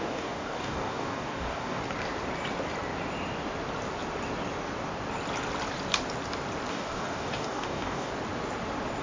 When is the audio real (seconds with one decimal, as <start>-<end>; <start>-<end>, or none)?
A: 1.8-6.7; 8.1-9.0